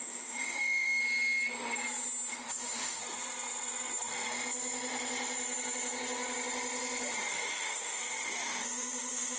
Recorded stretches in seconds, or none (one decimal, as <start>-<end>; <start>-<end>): 1.0-2.3; 3.0-7.3; 8.0-8.6

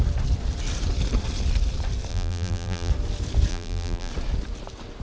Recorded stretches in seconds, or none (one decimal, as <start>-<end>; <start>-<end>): 0.0-2.1; 2.9-3.5; 4.1-5.0

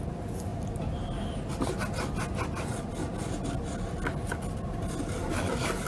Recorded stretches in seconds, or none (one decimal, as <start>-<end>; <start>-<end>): 0.0-5.9

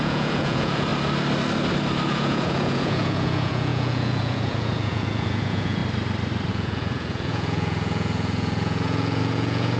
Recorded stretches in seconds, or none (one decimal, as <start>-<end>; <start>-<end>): 0.9-2.1; 5.8-6.5

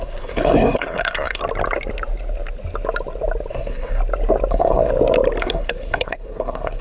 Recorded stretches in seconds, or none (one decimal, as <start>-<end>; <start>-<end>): 1.4-3.5; 4.0-4.5; 4.9-5.4

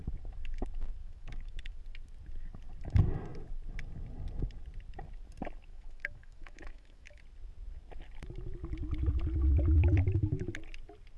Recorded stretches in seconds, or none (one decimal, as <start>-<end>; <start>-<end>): 0.0-1.0; 1.7-5.7; 7.2-11.2

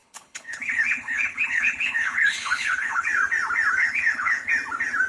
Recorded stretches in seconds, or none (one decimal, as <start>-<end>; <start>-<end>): 3.1-3.8; 4.5-5.1